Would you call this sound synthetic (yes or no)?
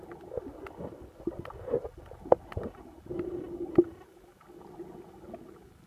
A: no